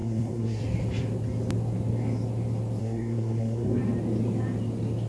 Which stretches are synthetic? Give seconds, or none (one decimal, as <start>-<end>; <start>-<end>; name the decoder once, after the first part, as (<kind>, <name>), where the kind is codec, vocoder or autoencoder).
0.0-0.6 (codec, SNAC); 2.8-3.8